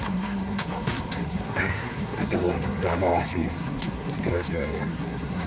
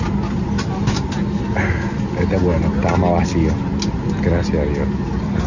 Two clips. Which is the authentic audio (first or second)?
second